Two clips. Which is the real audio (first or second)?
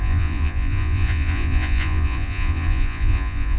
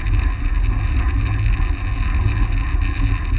second